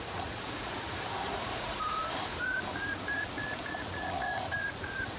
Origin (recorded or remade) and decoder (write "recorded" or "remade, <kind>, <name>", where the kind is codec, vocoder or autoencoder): remade, vocoder, Vocos